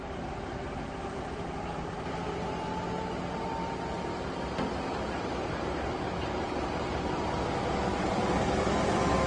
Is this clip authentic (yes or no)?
yes